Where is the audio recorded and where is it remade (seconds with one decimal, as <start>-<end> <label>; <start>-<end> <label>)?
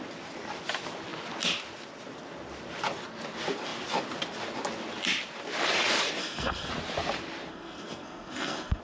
0.0-6.2 recorded; 6.2-6.7 remade; 6.7-7.5 recorded; 7.5-8.8 remade